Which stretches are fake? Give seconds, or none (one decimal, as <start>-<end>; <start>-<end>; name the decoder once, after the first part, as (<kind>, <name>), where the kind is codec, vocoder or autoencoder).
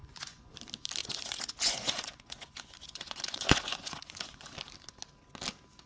0.0-0.5 (vocoder, Vocos); 1.0-4.5